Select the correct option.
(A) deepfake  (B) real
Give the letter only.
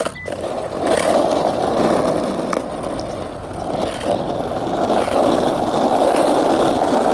B